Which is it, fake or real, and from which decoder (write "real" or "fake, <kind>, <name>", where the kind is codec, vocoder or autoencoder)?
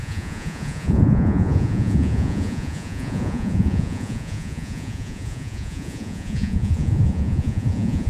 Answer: fake, vocoder, Vocos